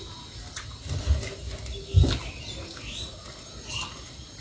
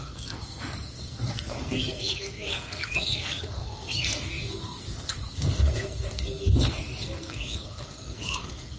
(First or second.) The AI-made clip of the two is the second